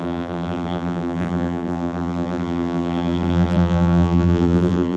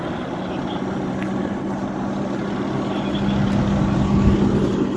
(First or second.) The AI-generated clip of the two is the first